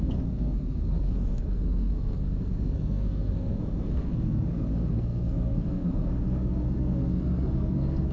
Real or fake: fake